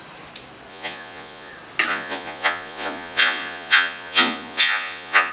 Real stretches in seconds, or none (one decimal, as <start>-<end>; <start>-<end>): 0.0-0.7; 1.5-1.9